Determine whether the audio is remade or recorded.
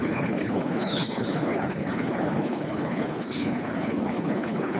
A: remade